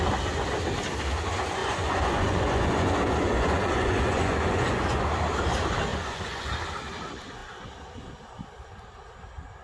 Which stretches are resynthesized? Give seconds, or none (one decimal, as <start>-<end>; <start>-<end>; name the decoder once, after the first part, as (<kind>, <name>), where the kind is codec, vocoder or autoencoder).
1.6-5.1 (vocoder, Vocos); 5.9-6.5